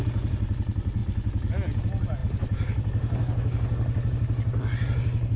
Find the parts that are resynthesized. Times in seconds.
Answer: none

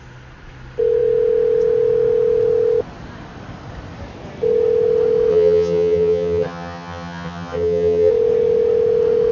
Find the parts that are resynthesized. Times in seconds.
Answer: 5.3-8.1 (vocoder, HiFi-GAN)

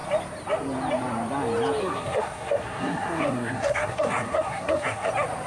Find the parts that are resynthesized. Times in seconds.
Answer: 1.8-5.1 (codec, SNAC)

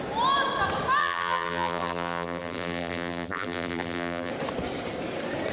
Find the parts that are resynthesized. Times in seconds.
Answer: 1.0-4.3 (vocoder, BigVGAN v2)